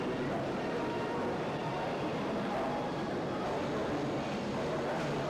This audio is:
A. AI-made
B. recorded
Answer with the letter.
B